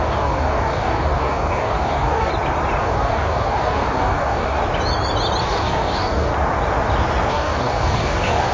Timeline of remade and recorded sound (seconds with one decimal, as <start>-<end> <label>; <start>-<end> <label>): 0.0-2.3 remade; 2.3-2.8 recorded; 2.8-4.6 remade; 4.6-5.4 recorded; 5.4-6.3 remade; 6.3-7.3 recorded; 7.3-8.5 remade